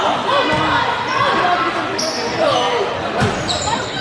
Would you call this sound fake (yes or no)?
no